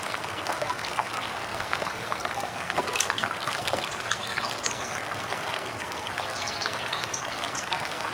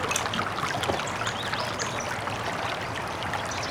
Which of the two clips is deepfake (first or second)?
first